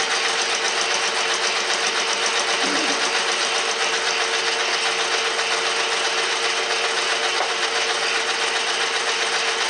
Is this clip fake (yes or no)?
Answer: no